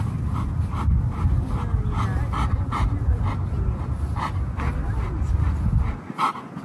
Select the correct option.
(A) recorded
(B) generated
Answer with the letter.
A